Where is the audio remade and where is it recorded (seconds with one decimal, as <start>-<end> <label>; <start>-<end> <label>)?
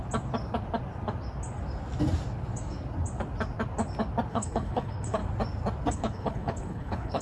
0.0-4.3 recorded; 4.3-5.2 remade; 5.2-5.9 recorded; 5.9-7.2 remade